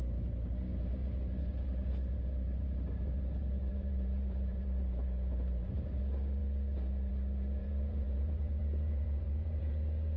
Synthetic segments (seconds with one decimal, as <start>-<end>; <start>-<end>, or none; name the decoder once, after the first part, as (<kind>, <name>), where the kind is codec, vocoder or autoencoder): 3.7-6.0 (vocoder, BigVGAN v2); 7.6-9.7